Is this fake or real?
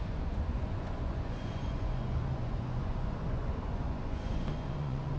fake